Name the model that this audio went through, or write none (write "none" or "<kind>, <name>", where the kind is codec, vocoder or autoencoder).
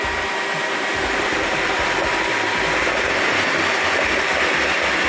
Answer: vocoder, BigVGAN v2